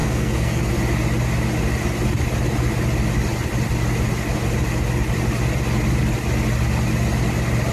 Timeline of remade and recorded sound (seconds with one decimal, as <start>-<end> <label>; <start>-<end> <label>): 0.0-0.7 remade; 0.7-7.7 recorded